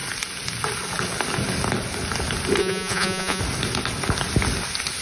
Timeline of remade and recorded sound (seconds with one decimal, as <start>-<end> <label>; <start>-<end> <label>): 0.0-2.6 recorded; 2.6-3.4 remade; 3.4-5.0 recorded